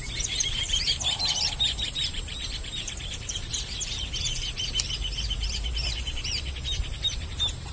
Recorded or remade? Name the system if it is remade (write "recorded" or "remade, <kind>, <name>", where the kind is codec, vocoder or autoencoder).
remade, vocoder, BigVGAN v2